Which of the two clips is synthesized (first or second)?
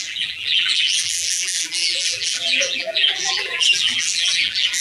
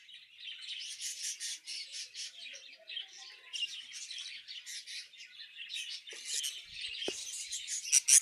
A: first